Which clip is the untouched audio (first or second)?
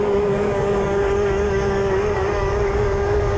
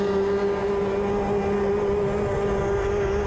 second